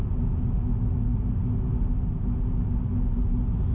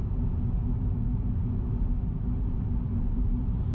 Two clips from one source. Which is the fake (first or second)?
second